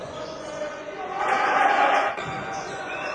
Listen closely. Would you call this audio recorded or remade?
remade